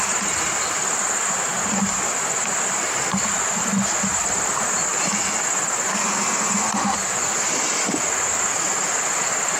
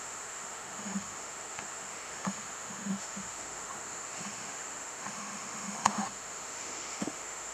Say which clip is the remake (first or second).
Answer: second